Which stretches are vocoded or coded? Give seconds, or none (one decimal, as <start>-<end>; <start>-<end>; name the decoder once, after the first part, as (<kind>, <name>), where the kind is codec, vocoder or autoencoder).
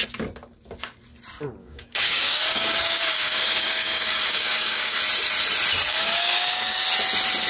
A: 1.6-5.0 (codec, DAC); 5.9-6.8